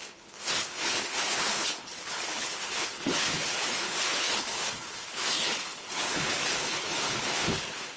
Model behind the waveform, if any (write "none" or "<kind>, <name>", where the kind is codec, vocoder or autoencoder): codec, HILCodec